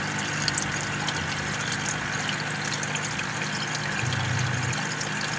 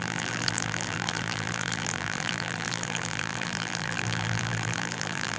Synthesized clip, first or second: second